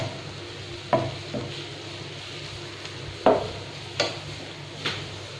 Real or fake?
real